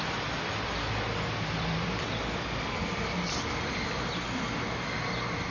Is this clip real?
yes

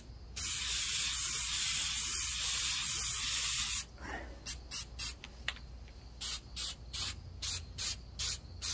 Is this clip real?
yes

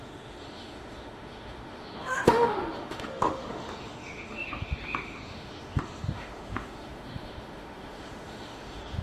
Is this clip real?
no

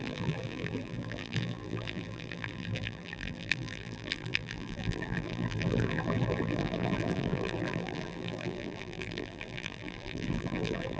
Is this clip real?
no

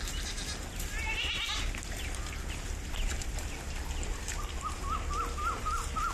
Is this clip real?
yes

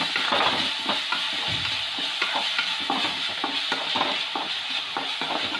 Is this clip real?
yes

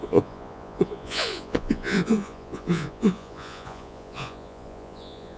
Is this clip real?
no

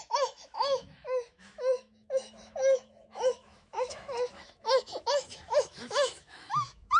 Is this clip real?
no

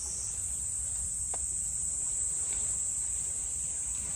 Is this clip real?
yes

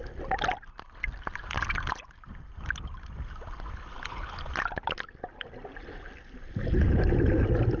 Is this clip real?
yes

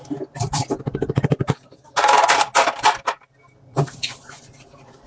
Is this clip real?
yes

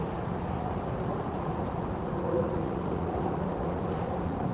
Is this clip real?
no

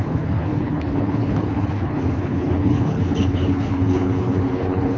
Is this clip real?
no